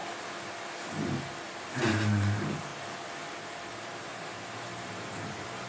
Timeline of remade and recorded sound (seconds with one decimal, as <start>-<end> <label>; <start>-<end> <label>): 0.0-1.4 recorded; 1.4-2.7 remade; 2.7-3.6 recorded; 3.6-5.7 remade